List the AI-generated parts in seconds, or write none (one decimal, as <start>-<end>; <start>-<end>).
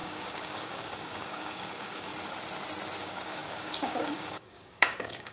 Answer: 0.0-2.1; 3.0-5.3